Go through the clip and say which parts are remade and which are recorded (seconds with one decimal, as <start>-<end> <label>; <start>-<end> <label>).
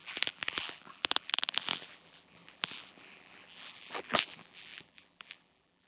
0.0-5.9 remade